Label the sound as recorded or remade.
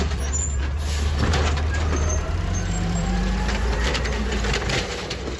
remade